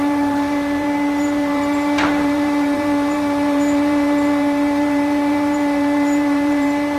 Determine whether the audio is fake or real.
fake